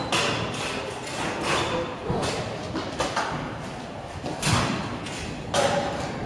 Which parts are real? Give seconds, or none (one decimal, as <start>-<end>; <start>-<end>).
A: 0.0-6.3